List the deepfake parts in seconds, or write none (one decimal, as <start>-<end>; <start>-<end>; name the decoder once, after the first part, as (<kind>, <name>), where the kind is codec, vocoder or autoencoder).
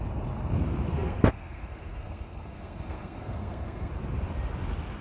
0.9-3.9 (codec, SNAC)